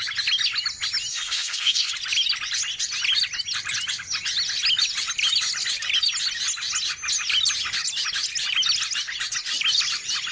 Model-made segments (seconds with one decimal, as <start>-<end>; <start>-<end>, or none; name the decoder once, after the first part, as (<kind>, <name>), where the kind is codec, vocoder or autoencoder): 1.1-1.9 (codec, SNAC)